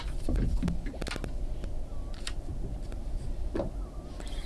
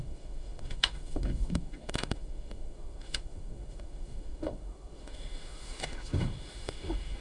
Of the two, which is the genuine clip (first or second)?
first